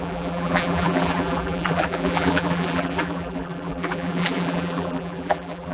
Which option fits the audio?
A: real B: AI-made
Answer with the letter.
B